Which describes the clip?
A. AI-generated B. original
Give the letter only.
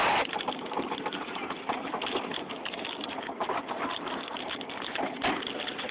B